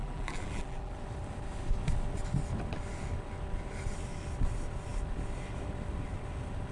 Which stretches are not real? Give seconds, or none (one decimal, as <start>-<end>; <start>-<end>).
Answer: 0.0-0.9